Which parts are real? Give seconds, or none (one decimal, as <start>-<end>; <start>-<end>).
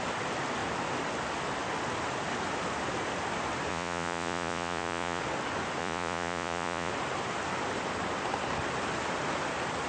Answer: 0.0-3.7; 5.2-5.8; 6.9-9.9